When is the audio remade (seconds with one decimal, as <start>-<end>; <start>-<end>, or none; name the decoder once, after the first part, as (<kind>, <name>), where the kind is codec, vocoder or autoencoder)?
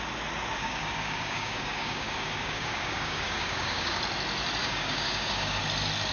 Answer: 0.6-4.0 (codec, DAC); 4.6-5.6